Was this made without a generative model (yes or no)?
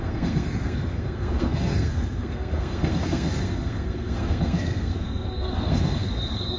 no